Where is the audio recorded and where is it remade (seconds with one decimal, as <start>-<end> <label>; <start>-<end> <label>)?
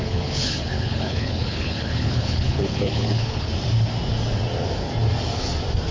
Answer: 0.0-3.5 remade; 3.5-5.9 recorded